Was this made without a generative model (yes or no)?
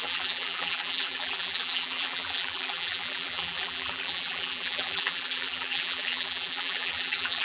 no